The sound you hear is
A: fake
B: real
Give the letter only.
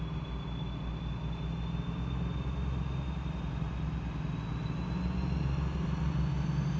B